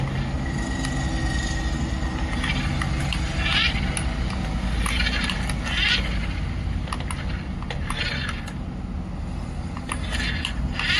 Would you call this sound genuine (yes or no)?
yes